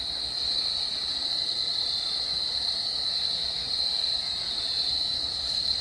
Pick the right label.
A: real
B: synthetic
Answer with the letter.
A